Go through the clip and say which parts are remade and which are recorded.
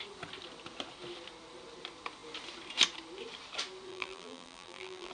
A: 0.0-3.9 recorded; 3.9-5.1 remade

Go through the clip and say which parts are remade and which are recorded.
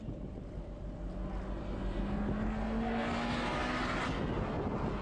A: 0.0-5.0 recorded